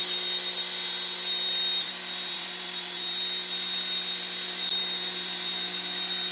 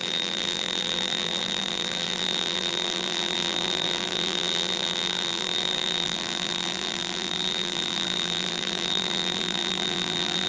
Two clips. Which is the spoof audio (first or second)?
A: second